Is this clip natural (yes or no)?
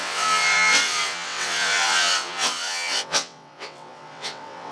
no